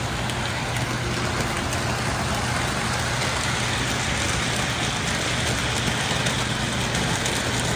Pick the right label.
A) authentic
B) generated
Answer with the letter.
A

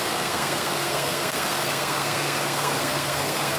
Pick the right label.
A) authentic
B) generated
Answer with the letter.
B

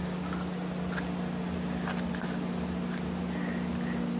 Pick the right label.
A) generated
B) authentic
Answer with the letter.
B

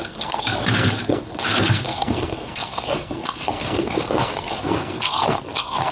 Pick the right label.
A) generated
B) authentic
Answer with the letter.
A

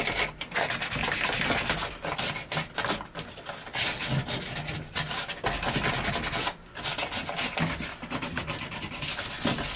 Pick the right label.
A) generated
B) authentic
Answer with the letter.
B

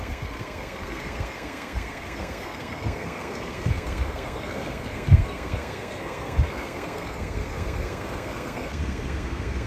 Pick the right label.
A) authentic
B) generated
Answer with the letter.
B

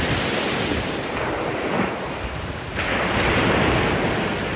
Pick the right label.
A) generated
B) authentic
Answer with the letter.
B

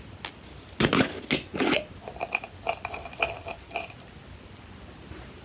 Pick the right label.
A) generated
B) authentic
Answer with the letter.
B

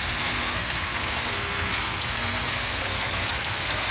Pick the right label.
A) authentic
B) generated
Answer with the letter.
B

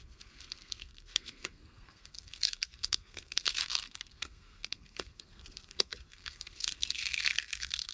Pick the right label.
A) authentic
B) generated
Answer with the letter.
B